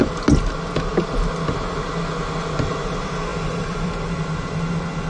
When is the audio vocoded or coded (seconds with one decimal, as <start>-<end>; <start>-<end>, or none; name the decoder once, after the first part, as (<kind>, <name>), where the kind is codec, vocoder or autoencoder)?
3.3-4.3 (vocoder, BigVGAN v2)